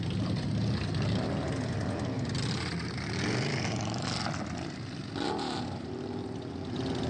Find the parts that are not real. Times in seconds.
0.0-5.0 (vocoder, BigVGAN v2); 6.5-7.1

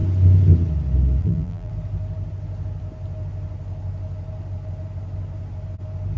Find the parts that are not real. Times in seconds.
1.2-1.7 (vocoder, BigVGAN v2)

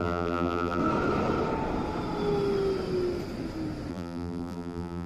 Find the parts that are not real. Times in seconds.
0.0-0.8 (vocoder, BigVGAN v2); 3.9-5.1

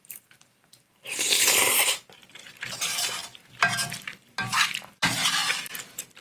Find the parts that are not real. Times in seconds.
0.0-6.2 (vocoder, BigVGAN v2)